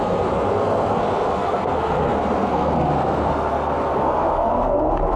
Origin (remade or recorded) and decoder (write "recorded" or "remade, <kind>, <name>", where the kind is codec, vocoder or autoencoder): remade, codec, SNAC